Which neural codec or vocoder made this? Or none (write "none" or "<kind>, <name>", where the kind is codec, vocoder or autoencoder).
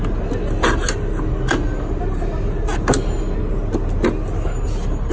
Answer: none